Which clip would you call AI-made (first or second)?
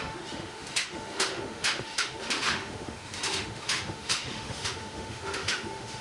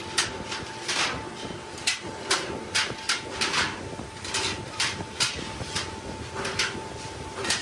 first